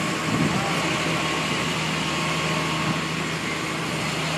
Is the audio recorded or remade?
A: recorded